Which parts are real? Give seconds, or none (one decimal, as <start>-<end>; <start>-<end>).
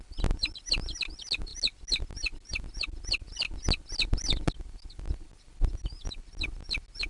0.0-7.1